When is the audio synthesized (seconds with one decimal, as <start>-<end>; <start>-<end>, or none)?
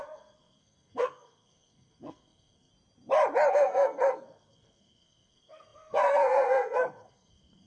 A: 0.0-2.7; 3.5-7.7